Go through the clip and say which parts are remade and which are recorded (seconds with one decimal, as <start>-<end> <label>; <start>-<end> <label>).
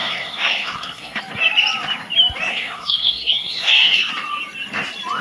0.0-1.2 remade; 1.2-2.5 recorded; 2.5-4.1 remade; 4.1-5.2 recorded